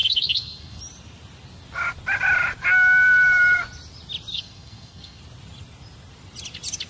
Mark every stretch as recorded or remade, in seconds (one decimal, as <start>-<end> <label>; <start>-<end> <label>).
0.0-0.8 remade; 0.8-4.3 recorded; 4.3-5.2 remade; 5.2-6.9 recorded